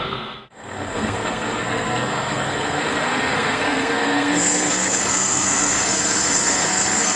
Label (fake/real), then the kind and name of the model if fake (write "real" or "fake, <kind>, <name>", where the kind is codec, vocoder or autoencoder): fake, codec, SNAC